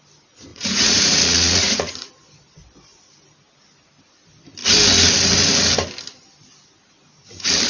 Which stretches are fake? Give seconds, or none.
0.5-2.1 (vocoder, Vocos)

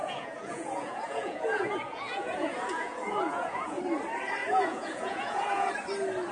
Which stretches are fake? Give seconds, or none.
0.0-3.8 (vocoder, Vocos); 4.4-5.7

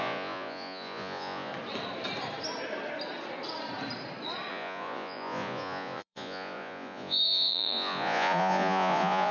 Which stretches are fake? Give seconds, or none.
0.0-1.5 (vocoder, Vocos); 4.5-9.3

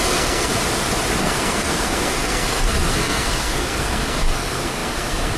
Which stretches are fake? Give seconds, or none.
0.0-0.5 (codec, SNAC); 1.2-5.4